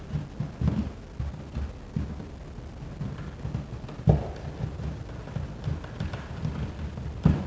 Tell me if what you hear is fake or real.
real